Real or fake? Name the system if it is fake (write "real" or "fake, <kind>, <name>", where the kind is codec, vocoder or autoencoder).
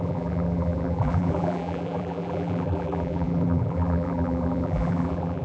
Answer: fake, vocoder, BigVGAN v2